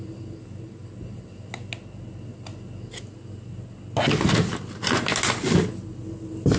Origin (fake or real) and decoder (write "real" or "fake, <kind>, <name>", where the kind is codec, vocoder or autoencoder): real